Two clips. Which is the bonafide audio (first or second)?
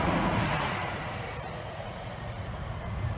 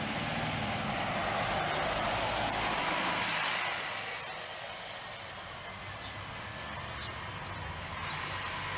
second